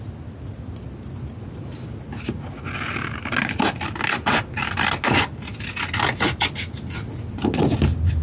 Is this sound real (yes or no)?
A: yes